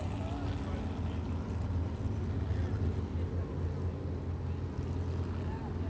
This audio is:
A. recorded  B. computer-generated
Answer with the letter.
A